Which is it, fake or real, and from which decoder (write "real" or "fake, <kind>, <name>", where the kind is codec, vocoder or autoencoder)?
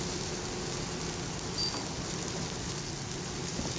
real